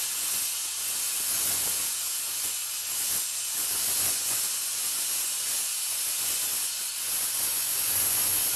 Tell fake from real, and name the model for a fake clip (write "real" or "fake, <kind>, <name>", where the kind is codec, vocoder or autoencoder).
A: fake, vocoder, Vocos